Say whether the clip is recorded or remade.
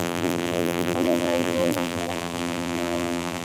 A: remade